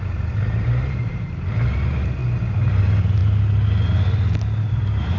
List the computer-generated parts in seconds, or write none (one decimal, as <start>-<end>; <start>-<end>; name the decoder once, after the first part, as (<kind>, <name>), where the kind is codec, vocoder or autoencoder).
0.0-2.2 (vocoder, BigVGAN v2); 2.8-3.2; 4.7-5.2